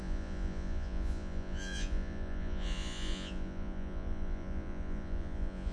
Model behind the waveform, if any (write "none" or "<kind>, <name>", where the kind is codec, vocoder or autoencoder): vocoder, Vocos